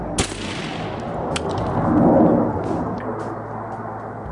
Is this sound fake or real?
real